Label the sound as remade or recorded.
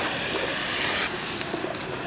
recorded